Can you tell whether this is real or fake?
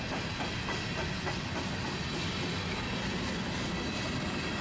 real